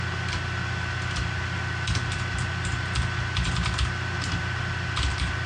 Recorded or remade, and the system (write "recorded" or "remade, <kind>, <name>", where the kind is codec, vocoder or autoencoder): recorded